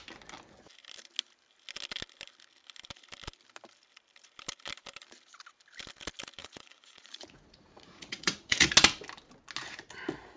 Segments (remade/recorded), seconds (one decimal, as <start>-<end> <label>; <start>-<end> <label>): 0.0-6.4 recorded; 6.4-8.7 remade; 8.7-10.4 recorded